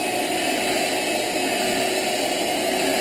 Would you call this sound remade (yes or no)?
no